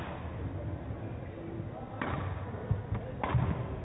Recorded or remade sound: recorded